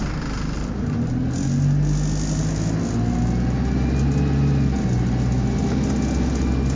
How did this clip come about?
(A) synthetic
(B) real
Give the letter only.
B